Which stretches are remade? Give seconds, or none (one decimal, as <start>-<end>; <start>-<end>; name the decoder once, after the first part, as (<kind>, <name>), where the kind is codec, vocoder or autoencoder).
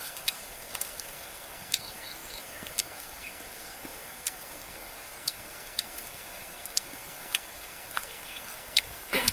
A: 0.0-9.3 (codec, SNAC)